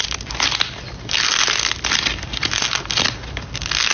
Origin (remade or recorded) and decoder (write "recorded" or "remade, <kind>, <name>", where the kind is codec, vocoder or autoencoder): recorded